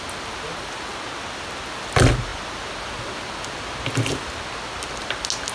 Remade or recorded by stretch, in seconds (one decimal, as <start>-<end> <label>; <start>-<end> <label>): 0.0-5.5 recorded

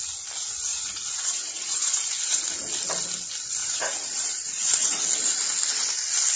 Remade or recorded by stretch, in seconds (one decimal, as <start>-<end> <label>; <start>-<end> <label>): 0.0-0.7 recorded; 0.7-2.4 remade; 2.4-3.6 recorded; 3.6-5.0 remade; 5.0-6.4 recorded

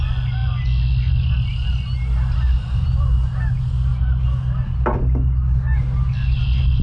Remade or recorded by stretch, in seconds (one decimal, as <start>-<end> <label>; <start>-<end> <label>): 0.0-6.8 recorded

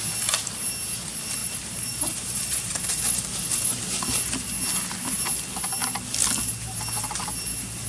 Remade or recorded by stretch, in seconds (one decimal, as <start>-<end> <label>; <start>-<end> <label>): 0.0-1.4 recorded; 1.4-3.8 remade; 3.8-7.9 recorded

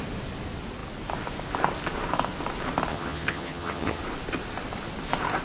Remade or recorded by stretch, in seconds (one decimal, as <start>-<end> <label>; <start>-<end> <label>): 0.0-2.9 recorded; 2.9-4.0 remade; 4.0-5.4 recorded

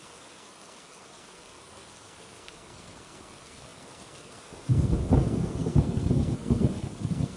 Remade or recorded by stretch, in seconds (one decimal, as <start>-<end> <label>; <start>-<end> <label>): 0.0-7.4 remade